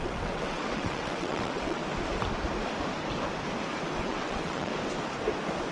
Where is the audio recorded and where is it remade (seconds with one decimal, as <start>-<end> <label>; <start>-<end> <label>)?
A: 0.0-1.8 remade; 1.8-4.0 recorded; 4.0-4.7 remade; 4.7-5.7 recorded